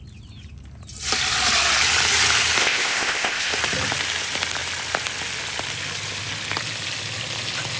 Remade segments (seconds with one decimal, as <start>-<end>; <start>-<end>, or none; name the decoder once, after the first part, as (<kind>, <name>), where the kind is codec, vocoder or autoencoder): 2.6-3.5 (codec, ZipCodec)